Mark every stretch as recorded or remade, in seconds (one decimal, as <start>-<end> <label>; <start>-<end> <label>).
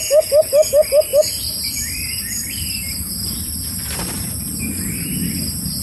0.0-5.8 recorded